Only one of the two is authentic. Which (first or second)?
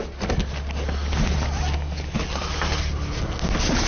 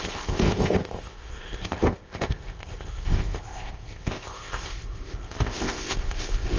first